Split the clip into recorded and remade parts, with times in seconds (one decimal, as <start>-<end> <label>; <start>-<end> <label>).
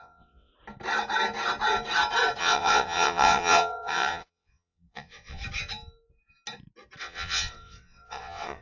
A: 0.0-0.5 remade; 0.5-2.4 recorded; 2.4-5.4 remade; 5.4-7.0 recorded; 7.0-8.6 remade